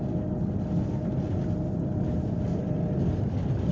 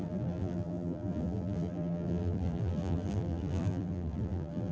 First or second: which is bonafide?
first